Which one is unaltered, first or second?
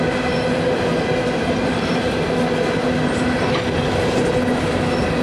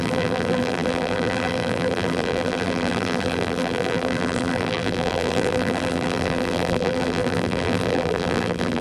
first